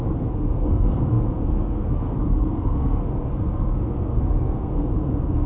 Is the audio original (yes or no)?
no